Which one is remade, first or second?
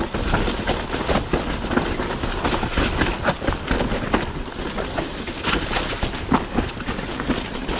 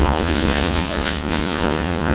second